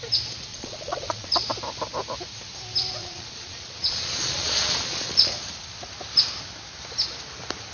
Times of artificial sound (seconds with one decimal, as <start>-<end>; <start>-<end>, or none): 0.5-1.3; 3.0-5.3